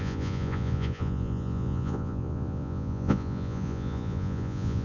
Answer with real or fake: fake